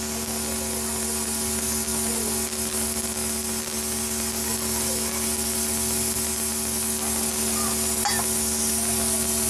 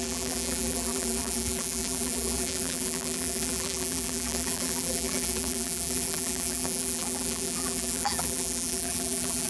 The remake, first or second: second